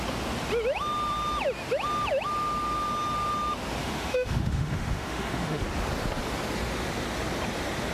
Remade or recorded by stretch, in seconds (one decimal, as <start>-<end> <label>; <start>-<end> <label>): 0.0-3.8 recorded; 3.8-5.6 remade; 5.6-7.9 recorded